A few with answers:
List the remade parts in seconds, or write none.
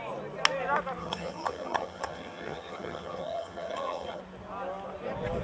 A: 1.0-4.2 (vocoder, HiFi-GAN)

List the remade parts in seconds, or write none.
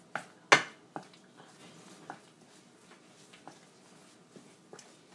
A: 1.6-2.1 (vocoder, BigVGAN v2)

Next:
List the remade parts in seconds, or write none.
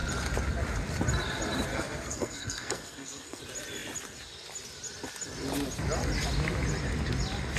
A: 1.7-3.4 (codec, SNAC)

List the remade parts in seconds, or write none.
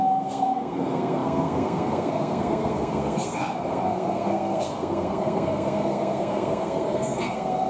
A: 0.0-7.7 (codec, SNAC)